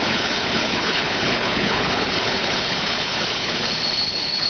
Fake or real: fake